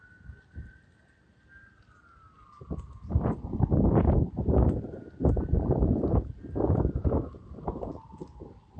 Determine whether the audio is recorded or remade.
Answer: recorded